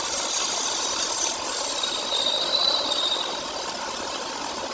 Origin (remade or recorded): recorded